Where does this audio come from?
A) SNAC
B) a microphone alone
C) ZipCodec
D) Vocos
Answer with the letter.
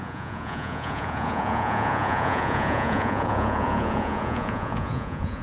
D